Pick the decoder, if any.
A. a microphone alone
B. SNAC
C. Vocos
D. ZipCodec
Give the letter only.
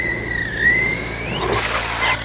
A